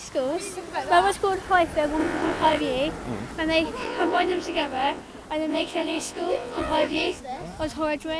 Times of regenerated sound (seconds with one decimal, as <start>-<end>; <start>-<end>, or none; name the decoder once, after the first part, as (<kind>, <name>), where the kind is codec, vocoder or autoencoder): 2.0-2.6 (vocoder, WaveNeXt); 3.8-5.0; 5.5-7.2